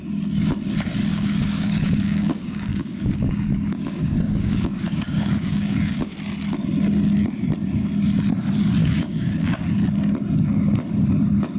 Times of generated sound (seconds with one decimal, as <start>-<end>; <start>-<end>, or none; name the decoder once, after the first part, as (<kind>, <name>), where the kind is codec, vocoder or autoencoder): 1.1-6.1 (codec, DAC); 8.8-9.6